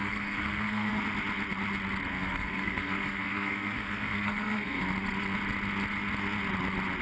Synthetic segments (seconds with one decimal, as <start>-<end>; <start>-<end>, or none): 0.0-0.9; 2.1-4.8